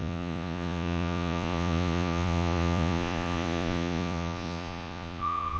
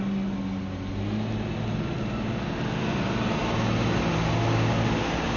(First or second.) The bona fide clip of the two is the second